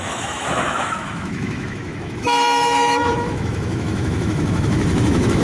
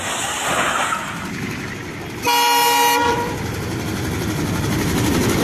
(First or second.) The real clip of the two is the second